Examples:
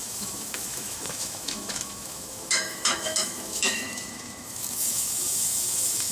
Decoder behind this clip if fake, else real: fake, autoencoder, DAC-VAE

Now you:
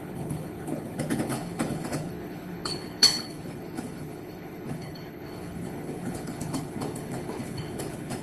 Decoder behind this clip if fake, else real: fake, codec, HILCodec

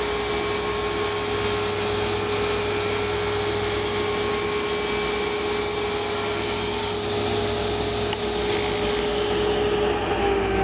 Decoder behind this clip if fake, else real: real